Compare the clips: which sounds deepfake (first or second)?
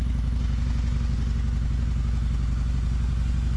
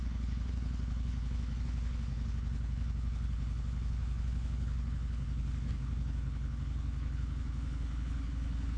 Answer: second